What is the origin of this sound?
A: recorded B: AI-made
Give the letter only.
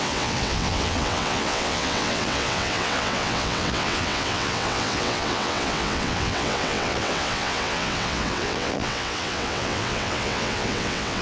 B